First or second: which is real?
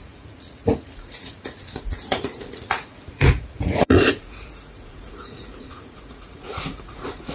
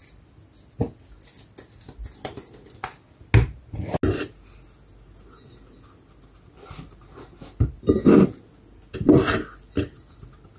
second